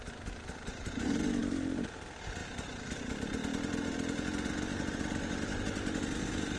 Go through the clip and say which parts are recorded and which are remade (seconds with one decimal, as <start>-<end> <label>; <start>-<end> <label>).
0.0-6.6 recorded